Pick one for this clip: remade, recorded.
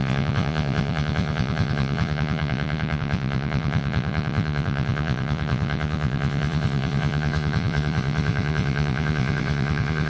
remade